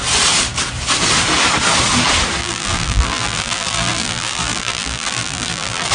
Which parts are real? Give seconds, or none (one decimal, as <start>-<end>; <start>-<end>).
0.0-2.4